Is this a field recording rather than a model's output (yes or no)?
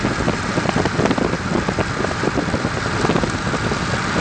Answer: yes